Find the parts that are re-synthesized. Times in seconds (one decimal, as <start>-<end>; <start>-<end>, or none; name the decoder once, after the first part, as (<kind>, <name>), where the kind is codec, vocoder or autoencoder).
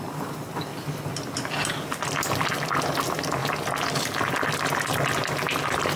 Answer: none